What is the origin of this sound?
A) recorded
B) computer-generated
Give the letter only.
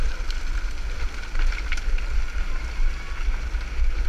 A